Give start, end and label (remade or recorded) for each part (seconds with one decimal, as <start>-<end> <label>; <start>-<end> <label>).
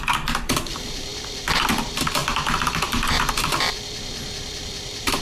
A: 0.0-5.2 remade